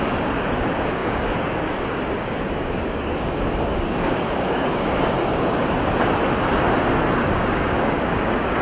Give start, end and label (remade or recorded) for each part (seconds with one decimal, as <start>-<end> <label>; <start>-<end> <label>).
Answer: 0.0-5.6 remade; 5.6-7.2 recorded; 7.2-8.6 remade